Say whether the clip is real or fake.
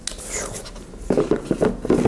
real